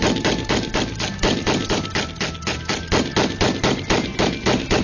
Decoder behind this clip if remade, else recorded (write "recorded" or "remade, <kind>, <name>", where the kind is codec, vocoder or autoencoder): recorded